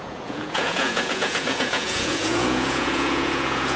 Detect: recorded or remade remade